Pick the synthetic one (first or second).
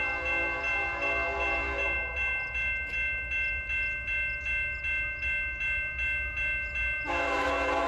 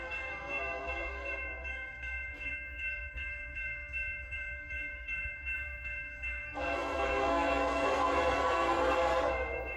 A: second